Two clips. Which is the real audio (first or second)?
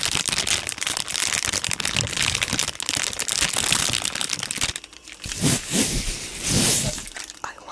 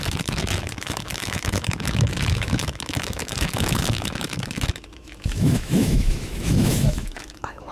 first